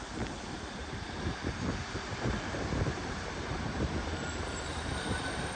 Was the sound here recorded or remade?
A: remade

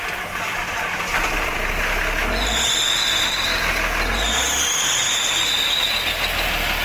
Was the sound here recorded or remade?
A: recorded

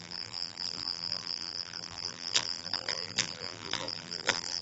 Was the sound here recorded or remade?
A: remade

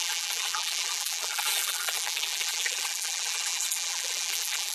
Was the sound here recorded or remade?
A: remade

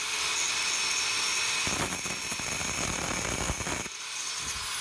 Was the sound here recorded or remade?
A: recorded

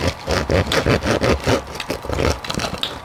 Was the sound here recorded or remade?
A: recorded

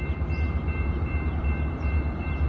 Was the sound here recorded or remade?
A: remade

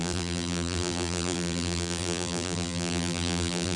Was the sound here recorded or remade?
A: remade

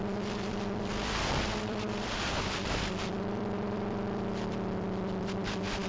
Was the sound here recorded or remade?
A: remade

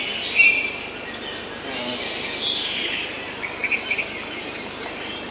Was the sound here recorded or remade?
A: recorded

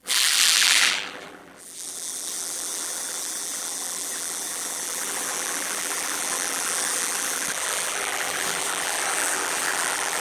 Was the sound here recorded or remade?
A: remade